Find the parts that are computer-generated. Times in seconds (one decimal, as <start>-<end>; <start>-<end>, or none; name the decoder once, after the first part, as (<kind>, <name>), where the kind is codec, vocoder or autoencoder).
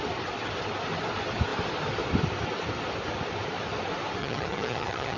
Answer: 4.2-5.2 (vocoder, HiFi-GAN)